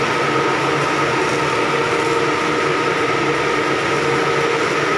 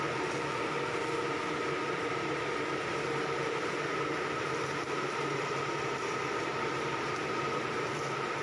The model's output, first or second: second